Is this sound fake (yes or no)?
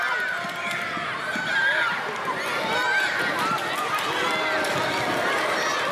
no